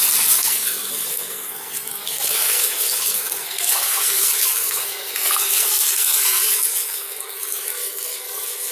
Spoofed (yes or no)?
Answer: yes